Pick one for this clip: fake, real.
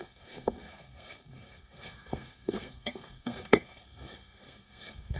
fake